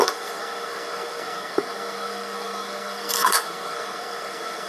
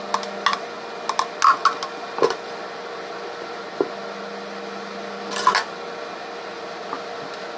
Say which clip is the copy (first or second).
first